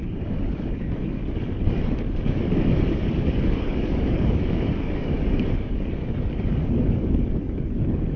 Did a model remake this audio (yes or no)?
yes